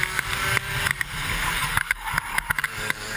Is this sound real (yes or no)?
no